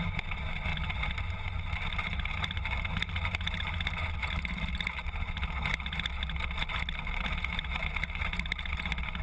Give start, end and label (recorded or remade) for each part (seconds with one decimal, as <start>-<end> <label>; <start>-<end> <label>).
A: 0.0-9.2 recorded